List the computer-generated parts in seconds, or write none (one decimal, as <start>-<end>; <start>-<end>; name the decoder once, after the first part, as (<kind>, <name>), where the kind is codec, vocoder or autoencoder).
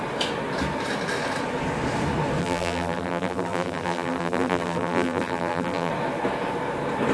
2.4-5.9 (vocoder, BigVGAN v2)